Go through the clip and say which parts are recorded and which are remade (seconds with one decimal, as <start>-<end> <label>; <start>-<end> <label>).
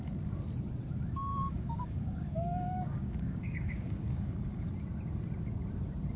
0.0-1.3 recorded; 1.3-4.7 remade; 4.7-6.2 recorded